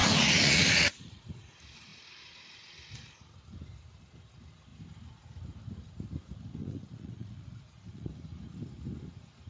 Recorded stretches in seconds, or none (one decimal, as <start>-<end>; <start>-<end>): 1.3-6.6; 8.1-9.5